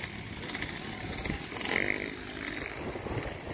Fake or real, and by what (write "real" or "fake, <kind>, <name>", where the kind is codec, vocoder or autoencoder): real